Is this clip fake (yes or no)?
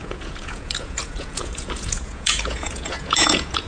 yes